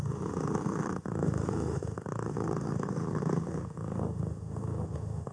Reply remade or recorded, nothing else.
remade